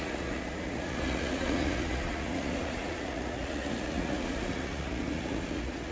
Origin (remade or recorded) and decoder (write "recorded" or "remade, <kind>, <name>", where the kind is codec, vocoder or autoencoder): remade, vocoder, Vocos